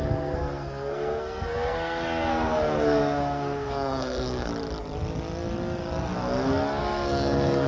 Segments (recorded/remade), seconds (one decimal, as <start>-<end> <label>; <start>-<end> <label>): 0.0-4.5 remade; 4.5-6.8 recorded; 6.8-7.7 remade